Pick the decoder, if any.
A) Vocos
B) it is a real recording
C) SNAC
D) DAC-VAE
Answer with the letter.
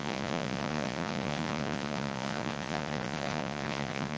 A